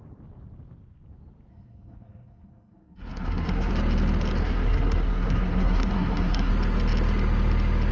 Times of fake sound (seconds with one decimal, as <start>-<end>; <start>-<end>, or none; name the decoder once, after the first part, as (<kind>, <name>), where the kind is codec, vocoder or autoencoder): 1.5-3.7 (codec, SNAC); 4.4-6.5